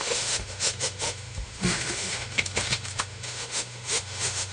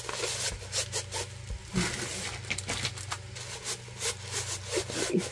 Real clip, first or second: second